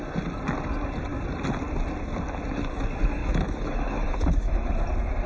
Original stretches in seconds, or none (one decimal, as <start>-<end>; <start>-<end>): 0.0-3.2; 4.7-5.3